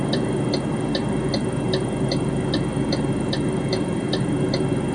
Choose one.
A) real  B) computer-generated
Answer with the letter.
A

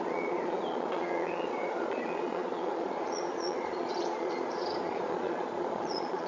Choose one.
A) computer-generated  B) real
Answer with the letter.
A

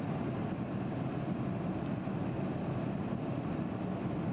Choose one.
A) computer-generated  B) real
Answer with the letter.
B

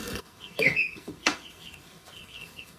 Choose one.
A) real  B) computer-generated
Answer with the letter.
B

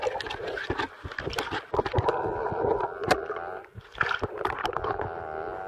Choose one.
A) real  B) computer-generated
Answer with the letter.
A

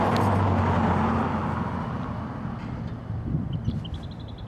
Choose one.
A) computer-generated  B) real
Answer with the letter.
B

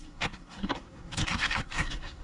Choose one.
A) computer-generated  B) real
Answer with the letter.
A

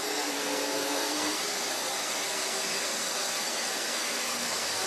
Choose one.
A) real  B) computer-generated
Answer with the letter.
B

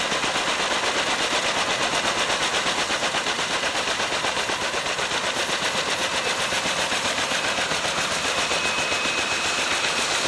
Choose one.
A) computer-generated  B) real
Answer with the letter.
B